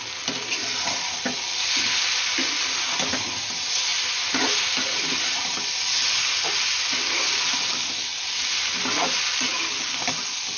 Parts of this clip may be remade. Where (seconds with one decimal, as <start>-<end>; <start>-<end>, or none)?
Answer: none

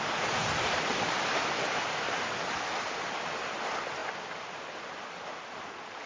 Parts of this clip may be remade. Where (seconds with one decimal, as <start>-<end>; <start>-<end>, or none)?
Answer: 4.0-5.3

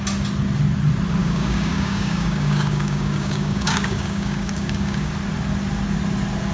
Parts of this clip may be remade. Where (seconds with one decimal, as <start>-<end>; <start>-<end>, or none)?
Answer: 1.2-5.1

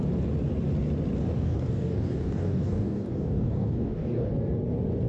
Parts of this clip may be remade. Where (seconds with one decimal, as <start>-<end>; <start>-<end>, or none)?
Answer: 1.2-4.3